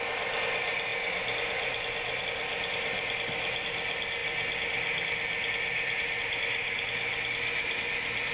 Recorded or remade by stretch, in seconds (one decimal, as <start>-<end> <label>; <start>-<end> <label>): 0.0-8.3 recorded